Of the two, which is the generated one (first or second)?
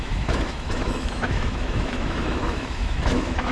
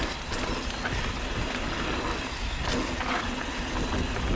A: first